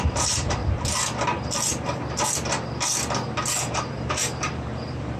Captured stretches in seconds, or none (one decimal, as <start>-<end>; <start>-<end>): 0.6-3.7